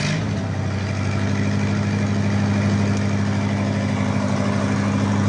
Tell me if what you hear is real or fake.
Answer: real